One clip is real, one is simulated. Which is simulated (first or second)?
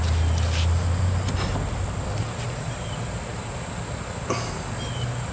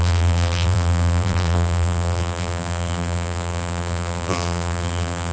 second